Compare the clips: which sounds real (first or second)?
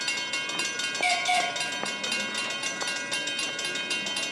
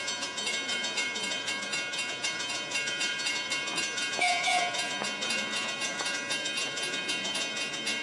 first